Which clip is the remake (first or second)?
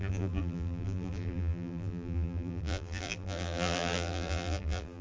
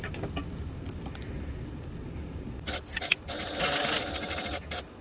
first